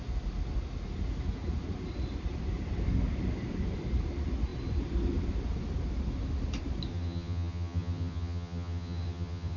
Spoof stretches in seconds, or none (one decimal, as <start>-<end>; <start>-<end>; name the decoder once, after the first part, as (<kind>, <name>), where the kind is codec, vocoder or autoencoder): 6.9-9.6 (vocoder, HiFi-GAN)